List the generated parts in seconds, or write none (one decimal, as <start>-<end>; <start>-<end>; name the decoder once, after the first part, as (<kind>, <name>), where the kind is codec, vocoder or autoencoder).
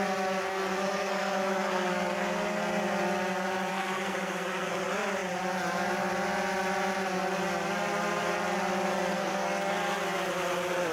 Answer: 0.5-2.6 (codec, SNAC); 3.7-4.7; 8.9-9.7